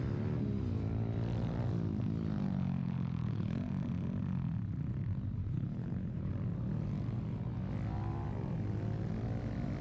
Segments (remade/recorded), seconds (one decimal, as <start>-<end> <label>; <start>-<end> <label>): 0.0-2.8 recorded; 2.8-3.6 remade; 3.6-5.4 recorded; 5.4-6.3 remade; 6.3-9.8 recorded